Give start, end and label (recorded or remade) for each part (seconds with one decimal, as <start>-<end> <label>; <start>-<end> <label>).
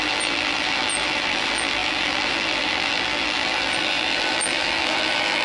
0.0-5.4 remade